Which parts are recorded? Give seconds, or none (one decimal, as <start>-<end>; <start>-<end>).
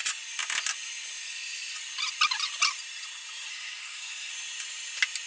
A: 0.0-3.5; 4.3-5.3